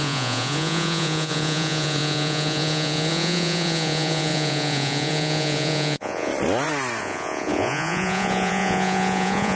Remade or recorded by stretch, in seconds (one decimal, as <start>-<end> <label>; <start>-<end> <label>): 0.0-6.3 remade; 6.3-7.0 recorded; 7.0-9.5 remade